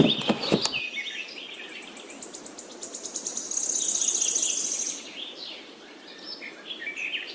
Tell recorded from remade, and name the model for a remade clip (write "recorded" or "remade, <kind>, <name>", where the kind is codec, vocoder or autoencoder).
recorded